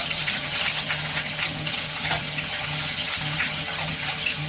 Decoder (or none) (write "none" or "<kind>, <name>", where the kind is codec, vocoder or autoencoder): vocoder, HiFi-GAN